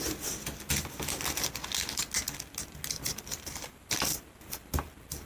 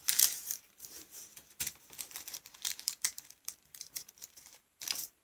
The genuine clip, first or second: first